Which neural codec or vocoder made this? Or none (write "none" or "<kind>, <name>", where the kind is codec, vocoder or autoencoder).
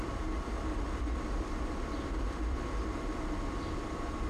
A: vocoder, BigVGAN v2